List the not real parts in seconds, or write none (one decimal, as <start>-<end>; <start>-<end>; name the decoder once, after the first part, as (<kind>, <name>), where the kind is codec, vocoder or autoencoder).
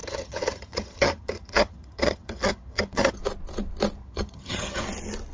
0.0-3.2 (vocoder, HiFi-GAN); 4.0-4.8